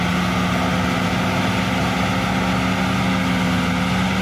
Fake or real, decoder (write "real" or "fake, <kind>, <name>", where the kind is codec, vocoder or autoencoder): real